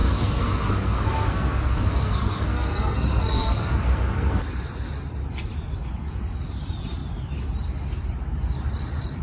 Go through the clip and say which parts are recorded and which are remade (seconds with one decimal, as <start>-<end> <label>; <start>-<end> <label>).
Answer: 0.0-4.4 remade; 4.4-9.2 recorded

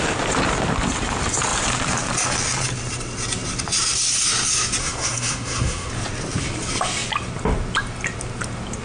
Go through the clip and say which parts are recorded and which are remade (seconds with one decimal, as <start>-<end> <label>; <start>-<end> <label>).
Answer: 0.0-4.8 recorded; 4.8-5.9 remade; 5.9-8.8 recorded